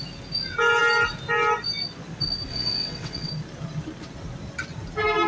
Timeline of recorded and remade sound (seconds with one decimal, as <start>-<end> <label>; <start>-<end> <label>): 0.0-2.5 recorded; 2.5-3.3 remade; 3.3-5.3 recorded